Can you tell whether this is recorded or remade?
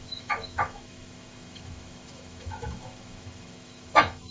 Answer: remade